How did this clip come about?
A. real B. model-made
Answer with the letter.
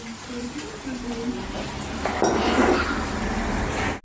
A